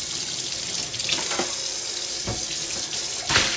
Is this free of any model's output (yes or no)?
yes